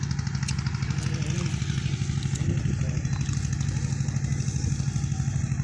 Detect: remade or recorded recorded